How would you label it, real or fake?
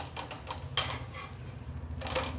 real